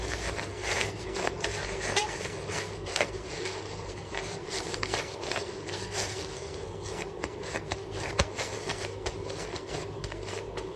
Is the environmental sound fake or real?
fake